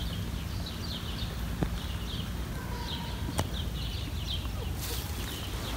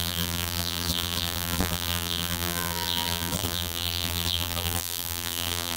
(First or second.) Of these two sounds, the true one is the first